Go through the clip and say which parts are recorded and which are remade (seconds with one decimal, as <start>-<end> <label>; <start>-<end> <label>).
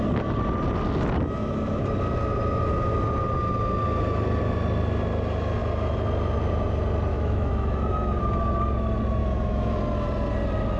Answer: 0.0-7.1 recorded; 7.1-8.2 remade; 8.2-9.2 recorded; 9.2-9.8 remade; 9.8-10.8 recorded